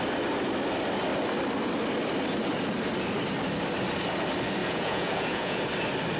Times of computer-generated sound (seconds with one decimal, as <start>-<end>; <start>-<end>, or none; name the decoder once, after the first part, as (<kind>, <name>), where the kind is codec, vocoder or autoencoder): 4.6-5.6 (vocoder, Vocos)